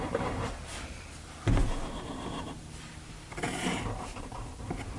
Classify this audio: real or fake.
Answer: fake